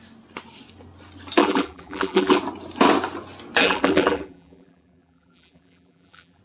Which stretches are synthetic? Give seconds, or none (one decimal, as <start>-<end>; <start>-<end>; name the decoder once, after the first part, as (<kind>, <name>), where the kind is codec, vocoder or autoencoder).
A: 1.4-2.4 (vocoder, BigVGAN v2); 3.6-6.4